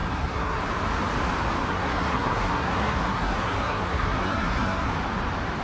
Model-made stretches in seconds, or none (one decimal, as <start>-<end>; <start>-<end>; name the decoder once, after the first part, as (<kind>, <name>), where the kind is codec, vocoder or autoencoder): 0.0-0.6 (codec, SNAC); 1.7-4.9